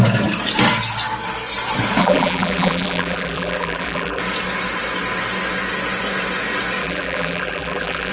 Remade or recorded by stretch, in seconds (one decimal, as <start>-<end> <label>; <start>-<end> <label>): 0.0-2.0 recorded; 2.0-4.2 remade; 4.2-6.8 recorded; 6.8-8.1 remade